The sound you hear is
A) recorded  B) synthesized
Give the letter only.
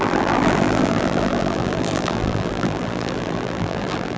B